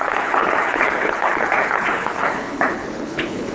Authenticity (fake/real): fake